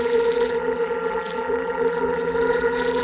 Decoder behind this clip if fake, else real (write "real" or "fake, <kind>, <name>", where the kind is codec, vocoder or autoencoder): fake, vocoder, BigVGAN v2